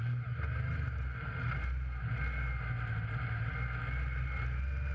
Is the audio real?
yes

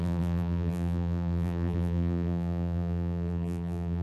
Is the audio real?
no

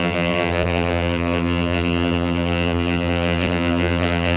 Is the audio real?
no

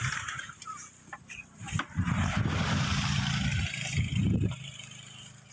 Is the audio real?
no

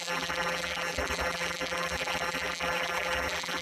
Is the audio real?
no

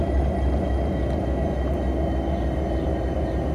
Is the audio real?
yes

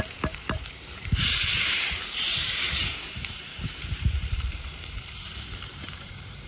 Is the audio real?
no